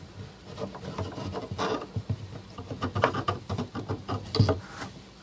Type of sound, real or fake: real